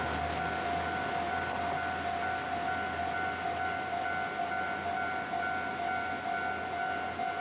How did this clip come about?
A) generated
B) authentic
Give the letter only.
B